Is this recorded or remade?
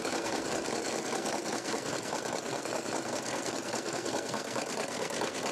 remade